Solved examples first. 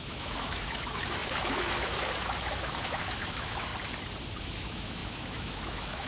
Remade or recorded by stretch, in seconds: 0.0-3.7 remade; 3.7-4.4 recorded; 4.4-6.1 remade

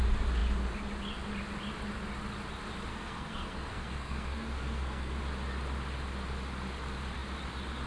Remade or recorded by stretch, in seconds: 0.0-2.9 recorded; 2.9-5.2 remade; 5.2-7.9 recorded

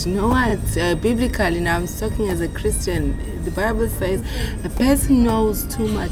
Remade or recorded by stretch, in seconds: 0.0-6.1 recorded

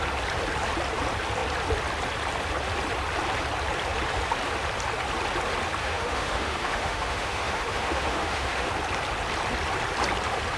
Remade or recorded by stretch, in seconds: 0.0-5.8 recorded; 5.8-8.7 remade; 8.7-10.6 recorded

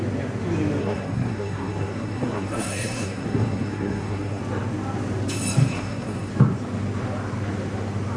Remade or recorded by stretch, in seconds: 0.0-0.8 recorded; 0.8-4.4 remade; 4.4-5.6 recorded; 5.6-6.3 remade; 6.3-8.2 recorded

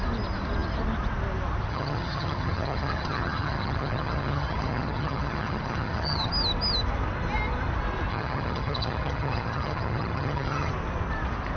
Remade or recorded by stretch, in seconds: 0.0-1.7 recorded; 1.7-6.3 remade; 6.3-8.1 recorded; 8.1-10.7 remade; 10.7-11.6 recorded

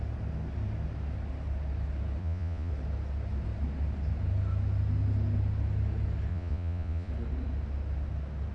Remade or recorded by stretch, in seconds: 0.0-2.2 recorded; 2.2-2.7 remade; 2.7-6.3 recorded; 6.3-7.1 remade; 7.1-8.5 recorded